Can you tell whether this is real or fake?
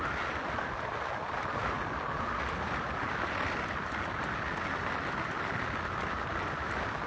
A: real